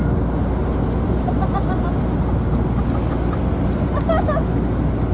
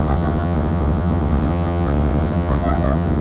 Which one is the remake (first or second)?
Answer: second